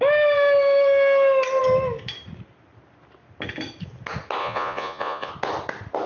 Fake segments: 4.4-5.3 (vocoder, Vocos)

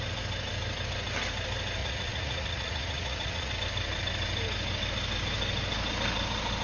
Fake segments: 1.8-3.5 (vocoder, Vocos)

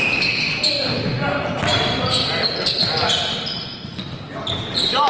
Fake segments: none